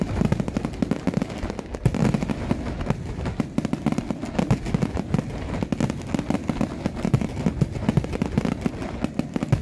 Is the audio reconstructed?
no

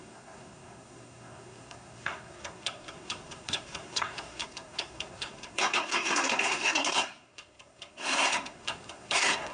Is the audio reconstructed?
yes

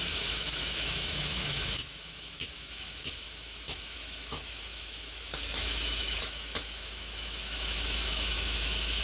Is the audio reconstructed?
yes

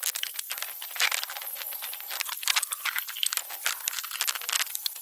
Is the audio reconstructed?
no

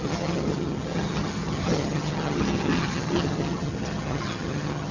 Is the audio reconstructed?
yes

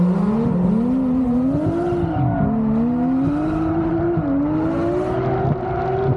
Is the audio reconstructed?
no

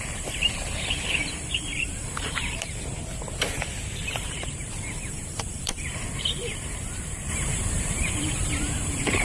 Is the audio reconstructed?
yes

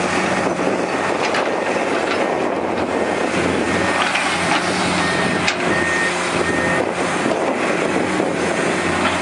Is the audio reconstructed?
no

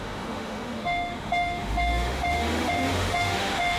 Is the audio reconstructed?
yes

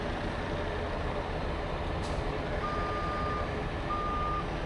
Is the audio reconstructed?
no